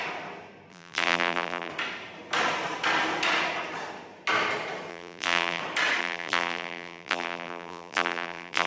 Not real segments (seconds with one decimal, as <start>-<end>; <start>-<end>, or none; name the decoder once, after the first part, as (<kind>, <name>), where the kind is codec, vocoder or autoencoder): 0.7-1.7 (vocoder, BigVGAN v2); 4.9-5.6; 6.0-8.7